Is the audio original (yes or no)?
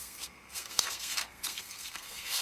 no